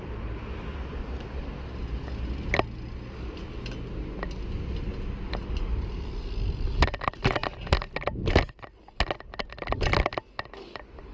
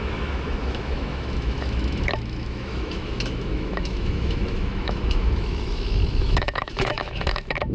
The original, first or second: first